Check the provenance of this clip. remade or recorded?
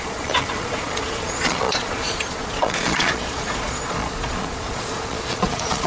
remade